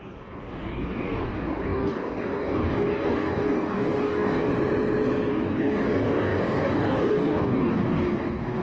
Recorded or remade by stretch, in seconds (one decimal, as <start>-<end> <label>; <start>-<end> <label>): 0.0-4.5 remade; 4.5-5.3 recorded; 5.3-8.6 remade